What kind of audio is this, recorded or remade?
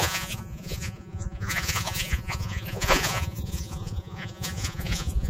remade